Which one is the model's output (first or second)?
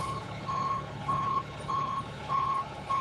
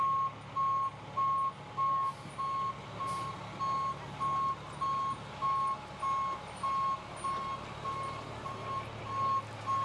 first